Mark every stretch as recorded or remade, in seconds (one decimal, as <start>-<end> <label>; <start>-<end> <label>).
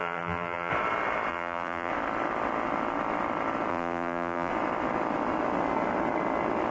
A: 0.0-0.7 remade; 0.7-1.3 recorded; 1.3-1.9 remade; 1.9-3.7 recorded; 3.7-4.5 remade; 4.5-6.7 recorded